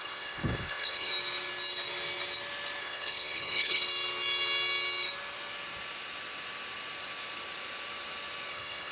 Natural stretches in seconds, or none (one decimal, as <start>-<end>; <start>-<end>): 1.1-2.8; 3.8-8.5